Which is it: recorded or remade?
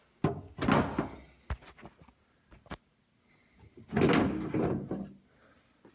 recorded